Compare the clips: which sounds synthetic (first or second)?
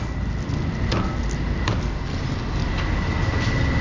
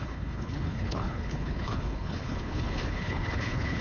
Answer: second